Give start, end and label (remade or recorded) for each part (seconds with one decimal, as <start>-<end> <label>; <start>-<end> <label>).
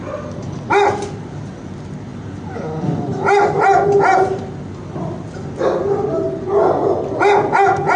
0.0-8.0 recorded